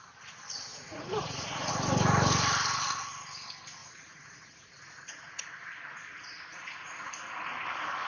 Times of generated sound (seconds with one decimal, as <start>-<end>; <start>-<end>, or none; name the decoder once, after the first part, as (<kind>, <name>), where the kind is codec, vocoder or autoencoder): 0.7-1.7 (vocoder, Vocos); 3.8-5.4; 6.5-7.1